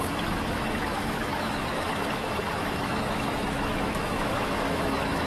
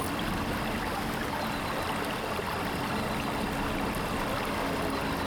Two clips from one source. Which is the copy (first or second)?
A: first